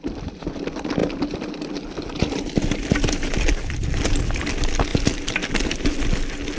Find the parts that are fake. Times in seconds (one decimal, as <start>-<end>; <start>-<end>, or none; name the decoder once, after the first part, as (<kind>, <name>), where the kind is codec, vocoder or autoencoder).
1.0-3.5 (vocoder, BigVGAN v2)